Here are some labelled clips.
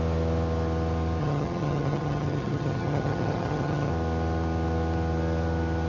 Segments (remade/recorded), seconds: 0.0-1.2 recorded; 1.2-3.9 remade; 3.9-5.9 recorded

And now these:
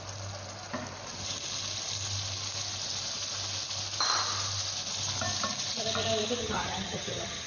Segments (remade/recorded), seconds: 0.0-6.4 recorded; 6.4-7.5 remade

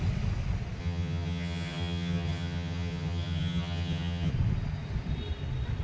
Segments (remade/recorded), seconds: 0.0-0.8 recorded; 0.8-4.3 remade; 4.3-5.8 recorded